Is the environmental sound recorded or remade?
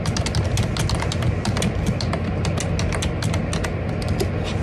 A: recorded